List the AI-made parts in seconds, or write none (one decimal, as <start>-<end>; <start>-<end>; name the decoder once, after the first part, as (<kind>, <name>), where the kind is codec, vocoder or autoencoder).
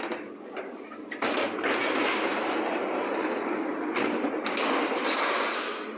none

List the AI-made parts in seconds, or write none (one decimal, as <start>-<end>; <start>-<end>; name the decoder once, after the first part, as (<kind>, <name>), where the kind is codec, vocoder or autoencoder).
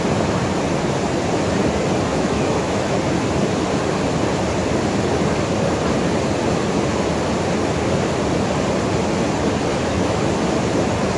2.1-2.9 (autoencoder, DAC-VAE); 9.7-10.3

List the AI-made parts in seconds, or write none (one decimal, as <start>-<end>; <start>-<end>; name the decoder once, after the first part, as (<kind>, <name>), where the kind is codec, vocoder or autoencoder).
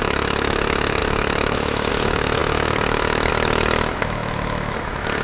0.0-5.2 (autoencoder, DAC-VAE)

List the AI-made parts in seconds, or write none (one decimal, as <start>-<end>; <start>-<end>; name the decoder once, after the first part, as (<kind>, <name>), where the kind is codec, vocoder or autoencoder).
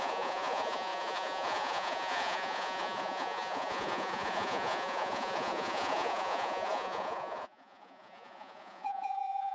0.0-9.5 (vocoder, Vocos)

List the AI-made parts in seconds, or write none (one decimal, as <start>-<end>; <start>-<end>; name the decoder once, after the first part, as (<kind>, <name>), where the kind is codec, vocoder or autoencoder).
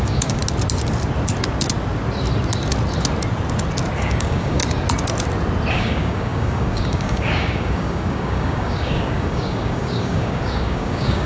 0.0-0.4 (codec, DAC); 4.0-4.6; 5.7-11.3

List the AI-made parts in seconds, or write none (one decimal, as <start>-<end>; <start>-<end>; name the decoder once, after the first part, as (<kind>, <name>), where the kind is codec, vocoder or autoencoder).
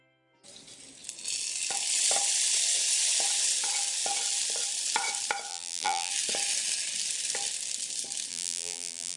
5.5-6.1 (vocoder, BigVGAN v2); 8.3-9.2